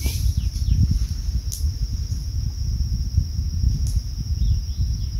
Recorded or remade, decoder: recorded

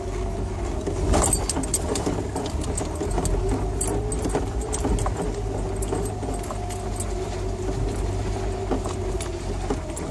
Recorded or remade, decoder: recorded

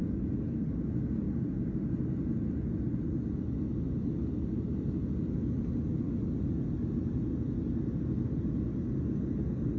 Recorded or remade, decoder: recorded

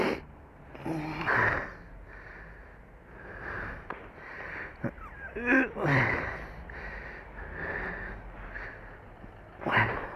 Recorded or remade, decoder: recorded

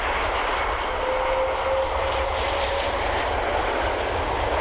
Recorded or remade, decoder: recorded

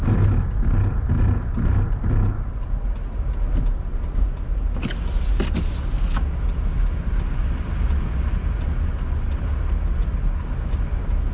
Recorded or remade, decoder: recorded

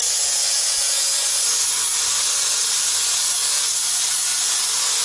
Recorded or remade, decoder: recorded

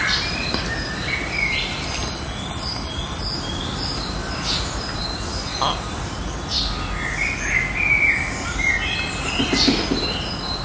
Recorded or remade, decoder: recorded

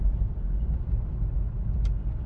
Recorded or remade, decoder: recorded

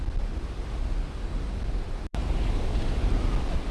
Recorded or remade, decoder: recorded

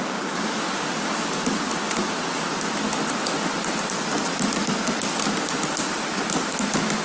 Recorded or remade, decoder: recorded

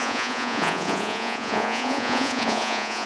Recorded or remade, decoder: remade, vocoder, Vocos